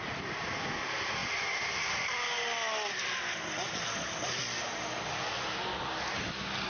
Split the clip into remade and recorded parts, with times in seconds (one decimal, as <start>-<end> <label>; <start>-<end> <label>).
0.0-6.7 recorded

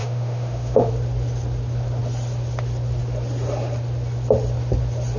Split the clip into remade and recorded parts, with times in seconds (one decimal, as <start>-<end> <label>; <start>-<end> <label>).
0.0-0.9 remade; 0.9-5.2 recorded

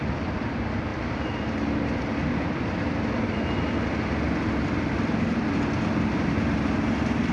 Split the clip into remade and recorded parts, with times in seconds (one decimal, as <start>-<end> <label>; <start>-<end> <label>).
0.0-7.3 recorded

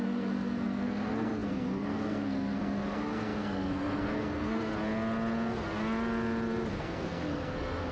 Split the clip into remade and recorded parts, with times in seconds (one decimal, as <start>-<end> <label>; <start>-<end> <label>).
0.0-4.7 remade; 4.7-6.7 recorded; 6.7-7.9 remade

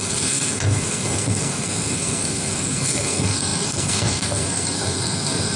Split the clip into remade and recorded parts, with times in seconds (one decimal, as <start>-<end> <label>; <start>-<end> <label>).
0.0-5.6 remade